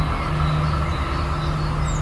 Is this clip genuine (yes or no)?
yes